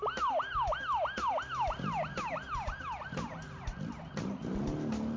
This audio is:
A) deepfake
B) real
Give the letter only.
B